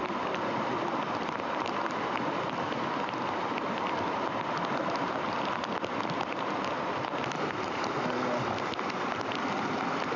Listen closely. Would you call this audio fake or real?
real